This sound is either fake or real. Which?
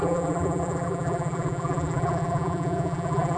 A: fake